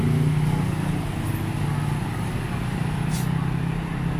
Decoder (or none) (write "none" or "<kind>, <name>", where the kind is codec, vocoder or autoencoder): none